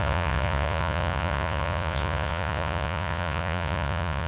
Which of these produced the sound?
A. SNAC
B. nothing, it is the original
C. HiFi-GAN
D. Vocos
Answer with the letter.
D